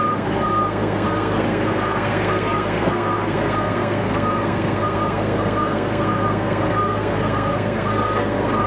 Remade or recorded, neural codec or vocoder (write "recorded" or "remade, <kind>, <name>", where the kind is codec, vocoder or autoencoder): remade, codec, SNAC